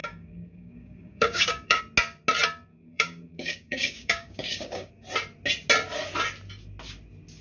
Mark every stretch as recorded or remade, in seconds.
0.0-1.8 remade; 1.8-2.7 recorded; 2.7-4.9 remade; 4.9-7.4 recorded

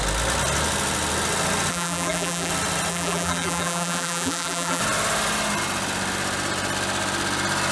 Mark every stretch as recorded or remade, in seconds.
0.0-1.7 recorded; 1.7-2.5 remade; 2.5-2.9 recorded; 2.9-4.8 remade; 4.8-7.7 recorded

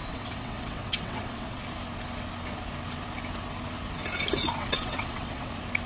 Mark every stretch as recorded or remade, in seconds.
0.0-1.6 remade; 1.6-4.6 recorded; 4.6-5.5 remade; 5.5-5.9 recorded